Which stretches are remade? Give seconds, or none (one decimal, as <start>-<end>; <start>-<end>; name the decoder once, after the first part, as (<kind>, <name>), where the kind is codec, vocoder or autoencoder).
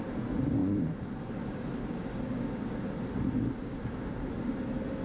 1.8-2.8 (codec, DAC); 3.6-4.5